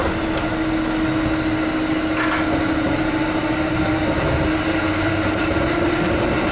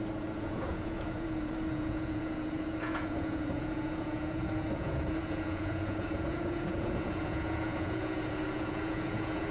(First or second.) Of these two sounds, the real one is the first